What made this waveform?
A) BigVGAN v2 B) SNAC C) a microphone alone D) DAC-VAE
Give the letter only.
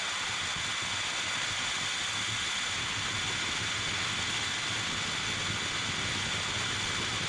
C